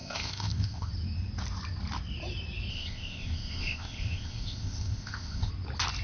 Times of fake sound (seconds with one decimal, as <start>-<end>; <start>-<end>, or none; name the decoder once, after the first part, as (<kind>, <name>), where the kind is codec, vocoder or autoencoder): 0.0-0.9 (codec, ZipCodec); 2.7-5.5